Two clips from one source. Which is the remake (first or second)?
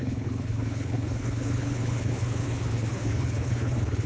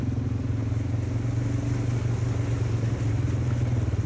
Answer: first